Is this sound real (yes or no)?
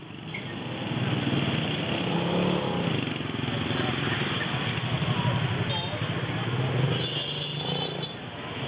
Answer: yes